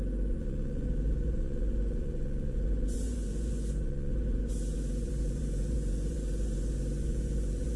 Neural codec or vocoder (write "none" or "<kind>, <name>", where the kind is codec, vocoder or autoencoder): vocoder, Vocos